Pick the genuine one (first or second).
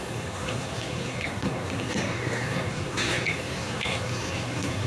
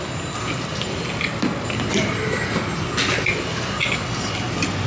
second